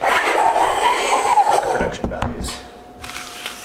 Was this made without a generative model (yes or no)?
no